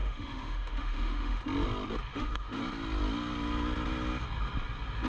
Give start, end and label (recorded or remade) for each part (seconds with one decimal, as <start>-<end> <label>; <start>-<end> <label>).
0.0-1.4 remade; 1.4-2.1 recorded; 2.1-2.6 remade; 2.6-5.1 recorded